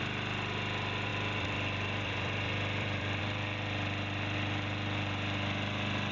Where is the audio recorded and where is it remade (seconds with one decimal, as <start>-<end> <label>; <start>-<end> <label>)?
0.0-1.1 recorded; 1.1-3.2 remade; 3.2-6.1 recorded